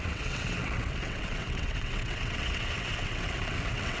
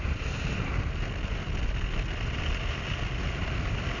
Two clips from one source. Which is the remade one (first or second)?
first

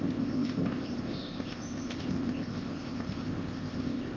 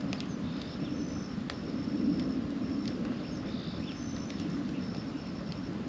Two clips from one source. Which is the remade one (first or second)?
first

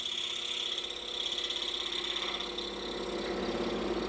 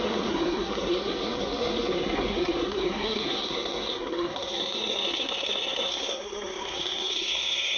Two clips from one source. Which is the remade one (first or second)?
second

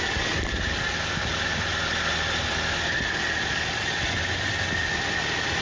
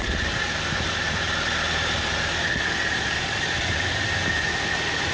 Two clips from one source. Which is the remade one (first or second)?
second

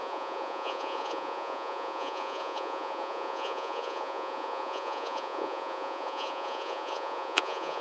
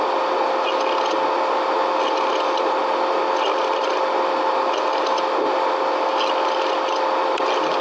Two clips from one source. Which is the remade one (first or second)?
first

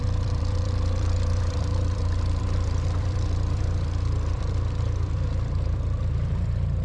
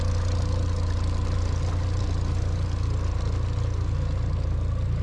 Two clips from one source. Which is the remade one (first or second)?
first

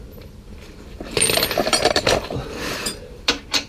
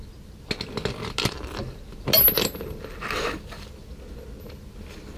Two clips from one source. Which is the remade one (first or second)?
first